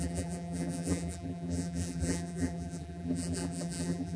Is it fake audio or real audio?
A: fake